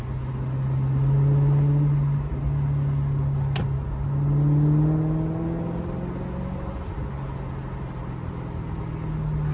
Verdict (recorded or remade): recorded